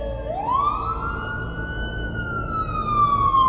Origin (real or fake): real